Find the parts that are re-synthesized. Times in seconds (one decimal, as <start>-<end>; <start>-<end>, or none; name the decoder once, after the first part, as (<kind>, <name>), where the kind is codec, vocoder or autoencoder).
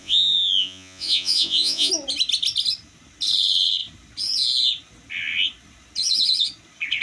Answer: 0.0-1.9 (vocoder, Vocos)